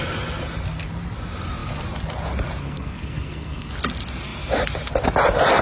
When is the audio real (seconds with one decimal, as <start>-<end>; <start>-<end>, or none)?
0.0-2.6; 3.7-5.6